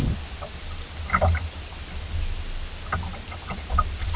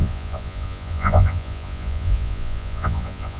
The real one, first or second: first